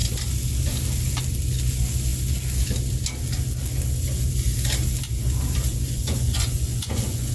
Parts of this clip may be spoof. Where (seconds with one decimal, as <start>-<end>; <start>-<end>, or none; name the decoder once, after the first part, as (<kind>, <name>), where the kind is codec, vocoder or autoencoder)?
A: 5.7-7.3 (vocoder, Vocos)